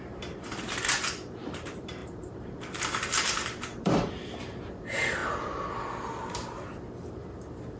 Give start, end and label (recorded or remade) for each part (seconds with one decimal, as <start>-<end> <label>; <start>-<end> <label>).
0.0-5.2 remade; 5.2-6.0 recorded; 6.0-7.8 remade